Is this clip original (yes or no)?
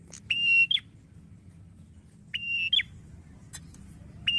yes